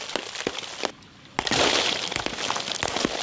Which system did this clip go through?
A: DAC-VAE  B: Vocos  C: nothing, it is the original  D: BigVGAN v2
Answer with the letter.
C